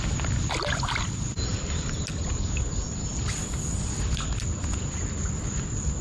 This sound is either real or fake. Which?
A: real